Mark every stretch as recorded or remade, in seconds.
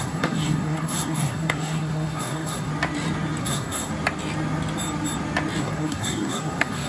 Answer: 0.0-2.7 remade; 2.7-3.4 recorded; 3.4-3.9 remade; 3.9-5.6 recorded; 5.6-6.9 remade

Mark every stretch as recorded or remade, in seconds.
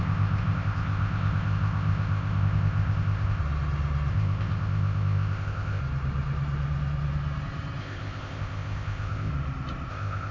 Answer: 0.0-3.4 remade; 3.4-4.1 recorded; 4.1-5.8 remade; 5.8-7.8 recorded; 7.8-9.3 remade; 9.3-9.9 recorded; 9.9-10.3 remade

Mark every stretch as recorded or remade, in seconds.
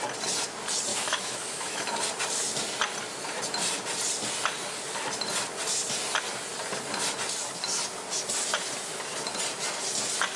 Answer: 0.0-0.9 recorded; 0.9-2.0 remade; 2.0-10.4 recorded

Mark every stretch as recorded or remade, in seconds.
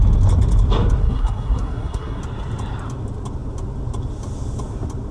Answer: 0.0-1.0 recorded; 1.0-2.2 remade; 2.2-5.1 recorded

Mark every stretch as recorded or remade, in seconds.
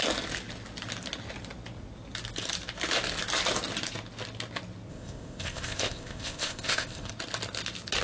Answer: 0.0-4.9 recorded; 4.9-7.1 remade; 7.1-8.0 recorded